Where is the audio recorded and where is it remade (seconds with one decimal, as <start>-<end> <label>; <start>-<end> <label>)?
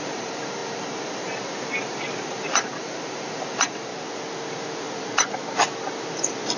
0.0-3.9 remade; 3.9-6.6 recorded